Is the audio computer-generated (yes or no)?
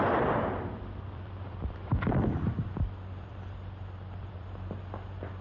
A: yes